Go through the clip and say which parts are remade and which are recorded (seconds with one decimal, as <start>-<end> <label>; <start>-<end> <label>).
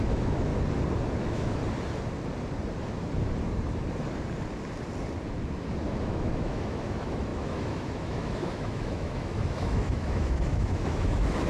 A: 0.0-0.5 remade; 0.5-1.2 recorded; 1.2-1.6 remade; 1.6-6.0 recorded; 6.0-11.5 remade